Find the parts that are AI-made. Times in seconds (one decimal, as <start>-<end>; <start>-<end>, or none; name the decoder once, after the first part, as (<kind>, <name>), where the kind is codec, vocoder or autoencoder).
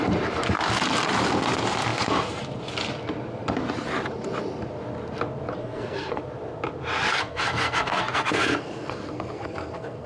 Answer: 5.6-6.2 (codec, SNAC); 7.1-10.1